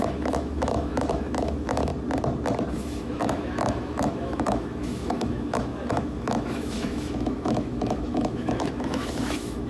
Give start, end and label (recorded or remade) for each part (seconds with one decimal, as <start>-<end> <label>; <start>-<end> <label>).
0.0-1.9 remade; 1.9-2.7 recorded; 2.7-9.7 remade